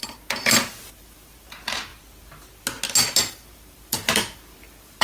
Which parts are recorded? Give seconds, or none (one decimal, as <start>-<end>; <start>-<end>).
1.9-3.3